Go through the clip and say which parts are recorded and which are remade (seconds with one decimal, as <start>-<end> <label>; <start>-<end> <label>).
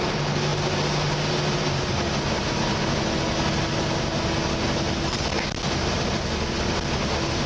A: 0.0-7.5 recorded